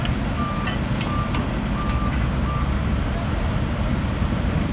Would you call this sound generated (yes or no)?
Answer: no